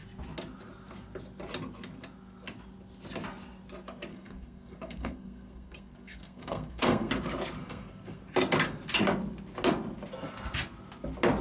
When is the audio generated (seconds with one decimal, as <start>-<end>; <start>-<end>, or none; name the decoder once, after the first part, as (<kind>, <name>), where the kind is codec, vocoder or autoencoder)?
4.1-7.1 (codec, SNAC); 7.6-8.2

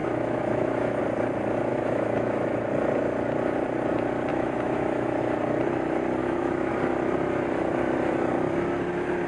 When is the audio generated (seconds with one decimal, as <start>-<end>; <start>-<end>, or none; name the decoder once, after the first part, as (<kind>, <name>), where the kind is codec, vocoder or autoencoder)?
0.0-1.0 (autoencoder, DAC-VAE); 1.7-2.7; 4.3-5.2; 6.2-6.7

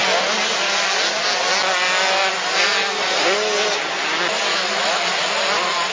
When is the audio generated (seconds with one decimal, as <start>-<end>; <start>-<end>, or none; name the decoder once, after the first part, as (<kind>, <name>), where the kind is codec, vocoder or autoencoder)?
4.5-5.0 (autoencoder, DAC-VAE)

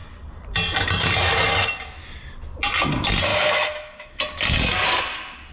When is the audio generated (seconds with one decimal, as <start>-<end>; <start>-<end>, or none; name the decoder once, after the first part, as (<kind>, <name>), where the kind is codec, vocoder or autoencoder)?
3.3-4.2 (autoencoder, DAC-VAE)

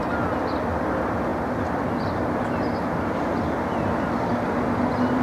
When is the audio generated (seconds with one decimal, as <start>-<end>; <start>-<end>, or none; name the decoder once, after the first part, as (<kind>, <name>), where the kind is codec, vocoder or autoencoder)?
none

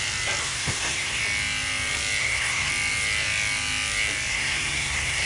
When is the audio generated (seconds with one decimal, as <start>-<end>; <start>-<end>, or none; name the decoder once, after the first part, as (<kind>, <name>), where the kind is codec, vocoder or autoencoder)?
0.4-1.2 (codec, SNAC); 2.2-2.7; 4.3-5.3

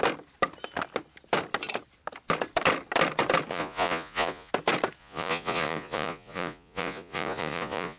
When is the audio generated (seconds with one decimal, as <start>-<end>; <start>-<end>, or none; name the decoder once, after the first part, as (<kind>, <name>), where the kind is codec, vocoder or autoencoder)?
3.5-4.5 (vocoder, Vocos); 5.0-8.0

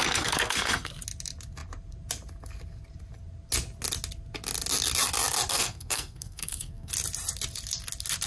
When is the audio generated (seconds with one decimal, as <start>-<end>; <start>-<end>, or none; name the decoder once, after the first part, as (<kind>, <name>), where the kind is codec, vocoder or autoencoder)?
0.0-0.9 (codec, SNAC); 5.5-6.9